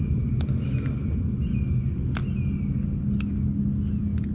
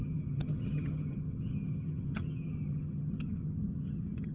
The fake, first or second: second